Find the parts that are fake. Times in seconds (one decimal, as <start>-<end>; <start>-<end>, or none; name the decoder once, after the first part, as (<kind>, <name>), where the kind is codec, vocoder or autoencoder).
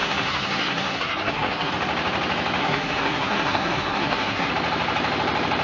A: 0.0-1.7 (codec, SNAC); 2.6-4.5